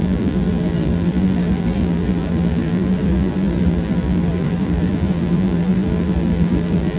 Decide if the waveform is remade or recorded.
remade